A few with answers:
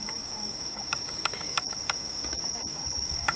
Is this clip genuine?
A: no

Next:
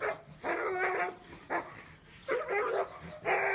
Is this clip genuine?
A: yes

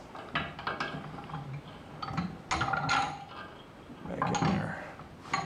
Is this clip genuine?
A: yes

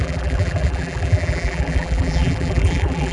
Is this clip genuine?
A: no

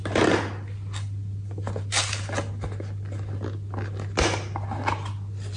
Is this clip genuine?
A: yes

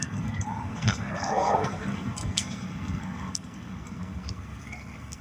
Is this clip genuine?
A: no